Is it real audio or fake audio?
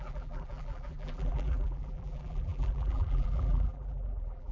fake